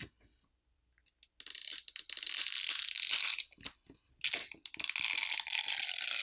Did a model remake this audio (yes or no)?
no